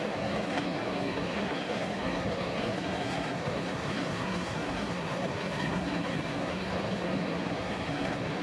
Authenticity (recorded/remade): remade